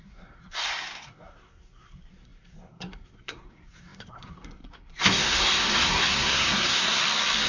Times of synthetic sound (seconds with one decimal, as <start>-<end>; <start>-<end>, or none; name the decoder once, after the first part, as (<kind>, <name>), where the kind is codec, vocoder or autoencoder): 0.0-7.0 (codec, SNAC)